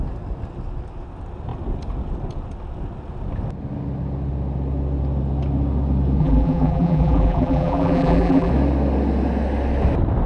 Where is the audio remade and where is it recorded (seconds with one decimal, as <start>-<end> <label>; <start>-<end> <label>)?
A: 0.0-6.2 recorded; 6.2-8.5 remade; 8.5-10.3 recorded